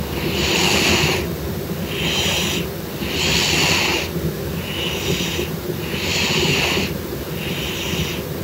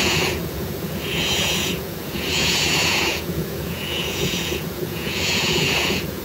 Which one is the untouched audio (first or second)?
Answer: first